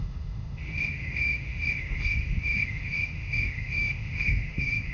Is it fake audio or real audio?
fake